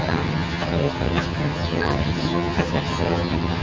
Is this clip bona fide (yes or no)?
no